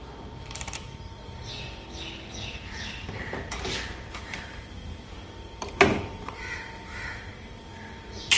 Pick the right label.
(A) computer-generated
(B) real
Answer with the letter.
A